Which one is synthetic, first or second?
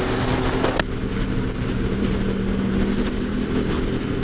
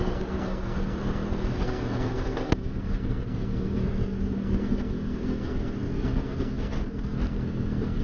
second